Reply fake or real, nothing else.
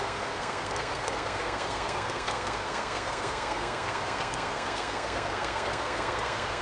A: fake